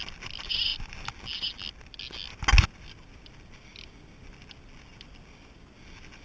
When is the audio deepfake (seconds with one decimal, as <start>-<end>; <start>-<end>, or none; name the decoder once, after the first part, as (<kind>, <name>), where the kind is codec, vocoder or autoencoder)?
none